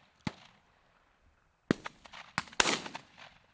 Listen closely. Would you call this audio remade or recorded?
recorded